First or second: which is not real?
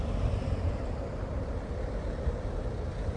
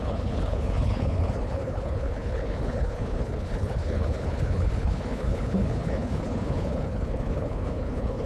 second